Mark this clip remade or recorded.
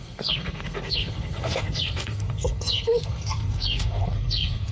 remade